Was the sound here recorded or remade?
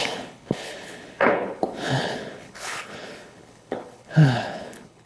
remade